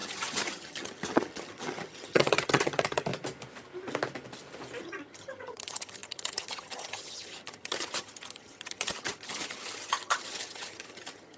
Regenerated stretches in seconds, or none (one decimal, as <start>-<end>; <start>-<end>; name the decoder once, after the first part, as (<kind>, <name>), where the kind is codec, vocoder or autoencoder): 0.0-3.1 (vocoder, HiFi-GAN); 4.8-11.4

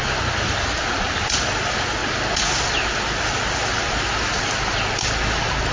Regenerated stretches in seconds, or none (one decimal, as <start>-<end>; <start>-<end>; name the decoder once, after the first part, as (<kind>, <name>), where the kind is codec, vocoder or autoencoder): none

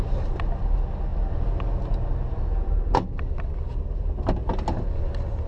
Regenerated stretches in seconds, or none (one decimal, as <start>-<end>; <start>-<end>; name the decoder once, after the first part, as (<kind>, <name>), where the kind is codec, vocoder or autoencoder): none

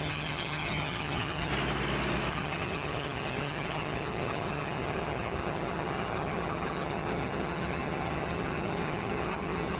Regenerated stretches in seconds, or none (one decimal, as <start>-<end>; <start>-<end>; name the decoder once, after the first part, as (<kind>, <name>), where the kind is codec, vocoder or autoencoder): 0.0-1.5 (vocoder, HiFi-GAN); 2.3-9.8

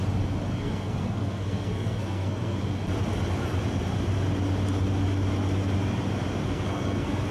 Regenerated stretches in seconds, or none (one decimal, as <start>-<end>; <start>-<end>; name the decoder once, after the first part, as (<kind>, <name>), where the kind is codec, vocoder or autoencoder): 0.5-2.6 (codec, SNAC); 6.4-7.3

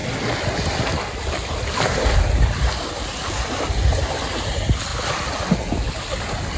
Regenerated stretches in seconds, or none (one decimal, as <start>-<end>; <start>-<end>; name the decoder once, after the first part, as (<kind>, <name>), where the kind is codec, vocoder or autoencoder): none